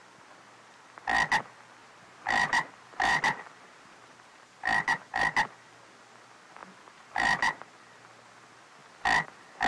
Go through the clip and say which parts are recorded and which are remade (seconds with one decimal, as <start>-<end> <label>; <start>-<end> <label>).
0.0-1.8 recorded; 1.8-5.2 remade; 5.2-6.6 recorded; 6.6-7.8 remade; 7.8-9.7 recorded